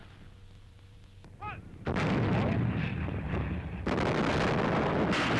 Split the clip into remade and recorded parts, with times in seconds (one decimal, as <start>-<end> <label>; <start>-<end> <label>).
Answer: 0.0-2.3 remade; 2.3-2.9 recorded; 2.9-3.5 remade; 3.5-5.4 recorded